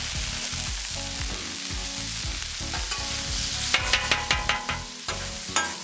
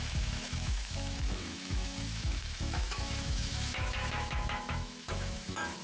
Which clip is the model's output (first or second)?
second